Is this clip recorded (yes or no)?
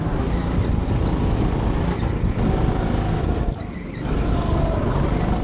yes